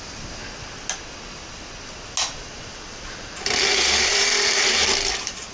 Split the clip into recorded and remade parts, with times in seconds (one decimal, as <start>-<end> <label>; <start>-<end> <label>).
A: 0.0-0.4 remade; 0.4-3.7 recorded; 3.7-5.5 remade